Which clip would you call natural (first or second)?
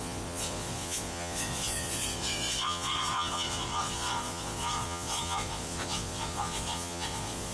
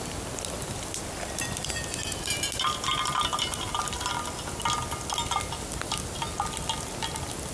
second